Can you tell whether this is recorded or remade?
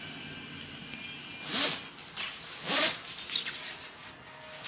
recorded